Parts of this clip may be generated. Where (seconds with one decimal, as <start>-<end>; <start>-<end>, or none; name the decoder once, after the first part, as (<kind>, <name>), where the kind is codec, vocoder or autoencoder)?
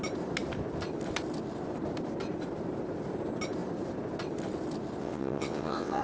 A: 5.0-6.0 (vocoder, WaveNeXt)